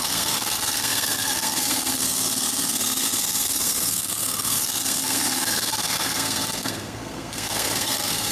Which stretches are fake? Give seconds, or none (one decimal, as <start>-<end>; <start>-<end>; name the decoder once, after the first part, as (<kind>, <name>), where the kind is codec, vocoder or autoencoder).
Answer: 0.0-8.3 (codec, SNAC)